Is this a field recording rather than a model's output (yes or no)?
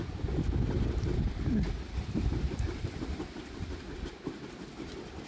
yes